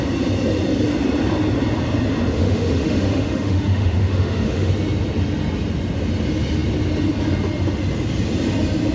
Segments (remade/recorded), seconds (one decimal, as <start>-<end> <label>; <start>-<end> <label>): 0.0-2.4 recorded; 2.4-4.7 remade; 4.7-8.9 recorded